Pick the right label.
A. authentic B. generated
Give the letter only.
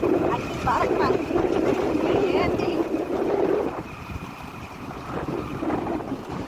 B